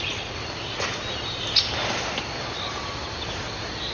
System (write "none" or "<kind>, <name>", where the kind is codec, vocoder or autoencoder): none